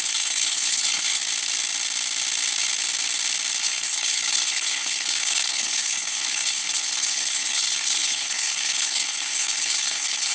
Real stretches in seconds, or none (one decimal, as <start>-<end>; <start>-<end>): 1.2-3.6

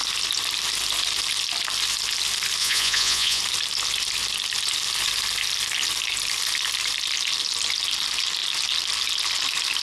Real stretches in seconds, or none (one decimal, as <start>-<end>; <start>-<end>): 0.0-2.6; 3.4-9.8

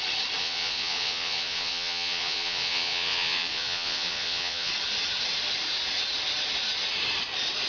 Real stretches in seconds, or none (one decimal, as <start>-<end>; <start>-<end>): 0.0-0.4; 4.7-7.7

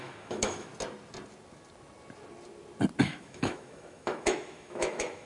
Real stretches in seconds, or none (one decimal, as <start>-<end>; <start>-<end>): 0.7-3.0

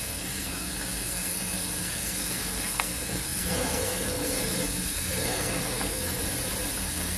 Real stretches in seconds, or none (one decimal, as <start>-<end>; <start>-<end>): 6.2-6.8